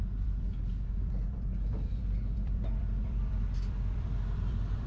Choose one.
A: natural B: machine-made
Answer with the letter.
B